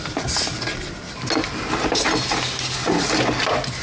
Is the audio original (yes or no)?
yes